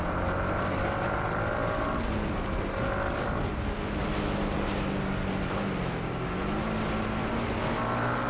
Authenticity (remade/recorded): recorded